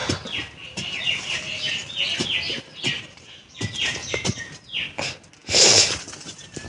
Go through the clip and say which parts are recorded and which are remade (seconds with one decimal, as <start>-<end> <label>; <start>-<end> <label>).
0.0-6.7 recorded

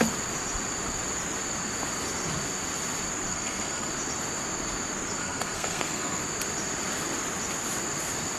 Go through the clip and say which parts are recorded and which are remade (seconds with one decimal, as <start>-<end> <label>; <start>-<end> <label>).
0.0-3.3 recorded; 3.3-3.9 remade; 3.9-5.2 recorded; 5.2-6.2 remade; 6.2-8.4 recorded

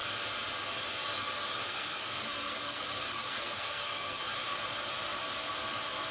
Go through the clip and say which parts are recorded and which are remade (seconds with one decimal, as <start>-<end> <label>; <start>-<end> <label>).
0.0-1.6 recorded; 1.6-4.3 remade; 4.3-6.1 recorded

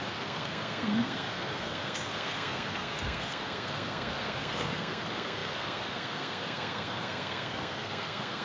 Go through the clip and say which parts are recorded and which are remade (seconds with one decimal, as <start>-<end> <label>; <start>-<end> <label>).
0.0-8.4 remade

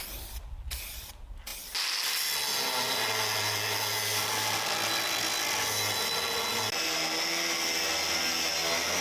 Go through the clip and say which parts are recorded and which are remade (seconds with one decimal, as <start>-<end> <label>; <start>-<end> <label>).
0.0-9.0 recorded

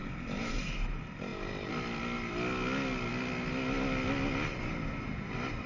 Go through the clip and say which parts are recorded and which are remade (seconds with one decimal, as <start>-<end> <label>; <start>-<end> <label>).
0.0-5.7 recorded